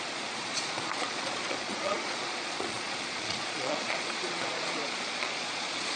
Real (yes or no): no